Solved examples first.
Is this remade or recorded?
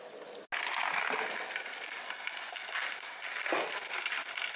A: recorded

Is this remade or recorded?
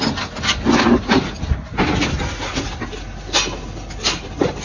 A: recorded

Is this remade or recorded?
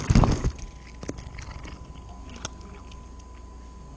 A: recorded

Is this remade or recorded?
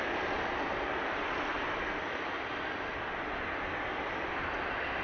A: recorded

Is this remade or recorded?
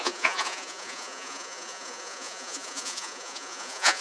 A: remade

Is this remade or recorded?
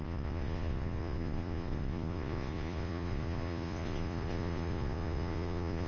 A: remade